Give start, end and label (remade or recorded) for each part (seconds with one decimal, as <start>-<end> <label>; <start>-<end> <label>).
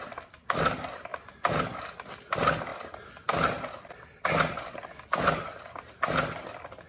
0.0-6.9 recorded